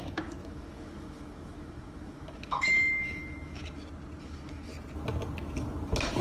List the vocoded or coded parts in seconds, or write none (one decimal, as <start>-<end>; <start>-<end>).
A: 0.0-3.6; 4.2-4.7